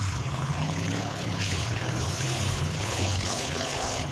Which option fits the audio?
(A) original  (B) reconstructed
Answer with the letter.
B